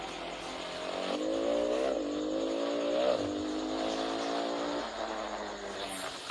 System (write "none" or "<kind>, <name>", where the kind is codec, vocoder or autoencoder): none